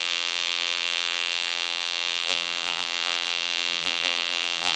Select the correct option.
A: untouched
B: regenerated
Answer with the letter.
B